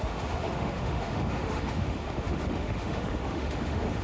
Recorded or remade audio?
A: remade